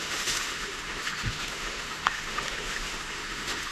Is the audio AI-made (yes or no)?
yes